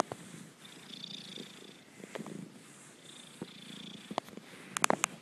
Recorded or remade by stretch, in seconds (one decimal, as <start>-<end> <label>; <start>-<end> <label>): 0.0-5.2 recorded